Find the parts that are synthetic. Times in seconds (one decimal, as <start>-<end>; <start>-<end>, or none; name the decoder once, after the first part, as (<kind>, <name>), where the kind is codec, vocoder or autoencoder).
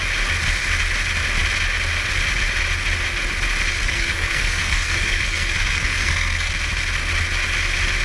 3.8-6.5 (codec, SNAC)